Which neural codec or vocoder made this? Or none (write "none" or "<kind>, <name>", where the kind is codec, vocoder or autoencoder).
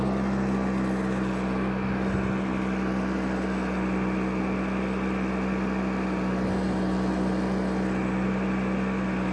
none